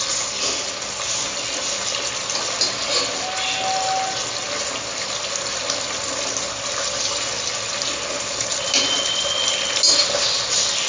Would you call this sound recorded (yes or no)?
yes